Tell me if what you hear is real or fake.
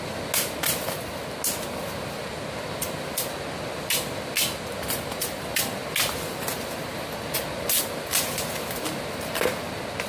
real